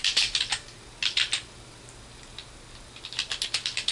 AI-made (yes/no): no